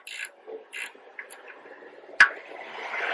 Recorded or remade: recorded